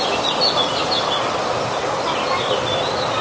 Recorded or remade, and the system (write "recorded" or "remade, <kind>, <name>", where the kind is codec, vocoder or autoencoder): recorded